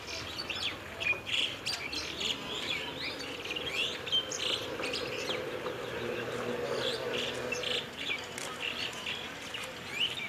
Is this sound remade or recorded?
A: recorded